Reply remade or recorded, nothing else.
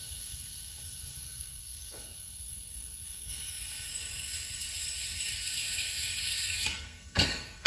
remade